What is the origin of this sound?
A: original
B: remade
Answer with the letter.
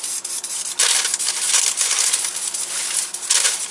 A